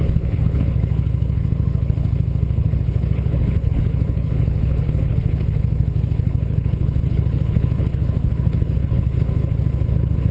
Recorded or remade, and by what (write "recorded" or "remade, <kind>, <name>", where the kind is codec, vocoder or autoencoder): remade, codec, HILCodec